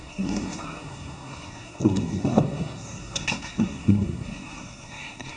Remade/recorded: remade